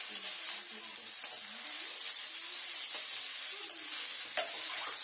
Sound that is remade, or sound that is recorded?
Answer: recorded